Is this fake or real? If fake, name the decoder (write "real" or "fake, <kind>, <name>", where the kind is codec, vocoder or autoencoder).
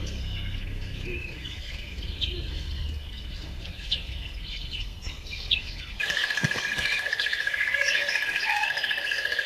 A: fake, codec, SNAC